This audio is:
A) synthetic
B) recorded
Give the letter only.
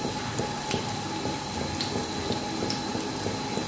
B